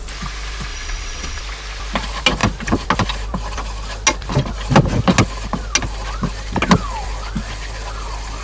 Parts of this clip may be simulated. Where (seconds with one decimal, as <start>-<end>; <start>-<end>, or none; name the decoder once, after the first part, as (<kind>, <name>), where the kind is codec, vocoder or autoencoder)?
0.7-1.4 (vocoder, WaveNeXt)